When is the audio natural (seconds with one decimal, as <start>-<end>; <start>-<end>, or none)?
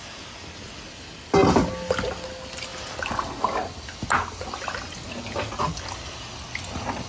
0.0-7.1